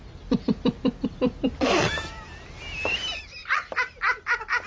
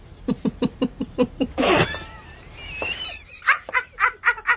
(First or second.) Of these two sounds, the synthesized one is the second